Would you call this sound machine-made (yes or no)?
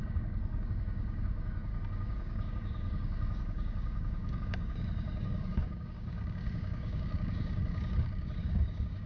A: yes